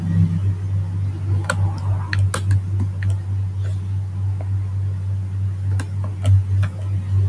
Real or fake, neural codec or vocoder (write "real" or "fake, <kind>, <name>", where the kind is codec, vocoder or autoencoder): real